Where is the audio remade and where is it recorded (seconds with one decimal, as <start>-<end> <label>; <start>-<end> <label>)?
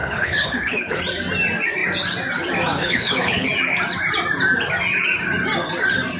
0.0-1.0 remade; 1.0-2.8 recorded; 2.8-3.5 remade; 3.5-6.2 recorded